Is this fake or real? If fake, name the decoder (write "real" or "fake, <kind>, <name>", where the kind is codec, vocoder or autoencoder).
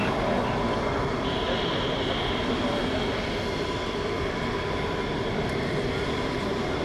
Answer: real